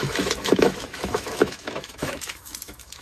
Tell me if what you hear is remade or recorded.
remade